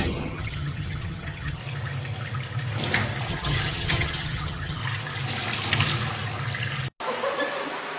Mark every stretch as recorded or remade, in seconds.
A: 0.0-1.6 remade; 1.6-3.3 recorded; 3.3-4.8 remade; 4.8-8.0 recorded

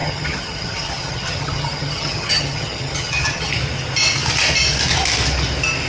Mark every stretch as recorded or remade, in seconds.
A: 0.0-3.5 remade; 3.5-5.9 recorded

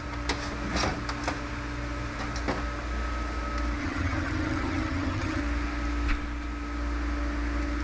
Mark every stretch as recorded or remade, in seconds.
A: 0.0-3.8 recorded; 3.8-5.4 remade; 5.4-7.8 recorded